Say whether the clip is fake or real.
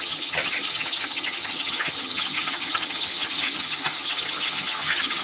fake